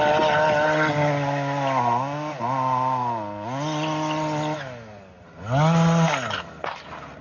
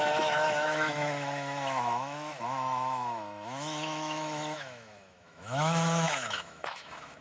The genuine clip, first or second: first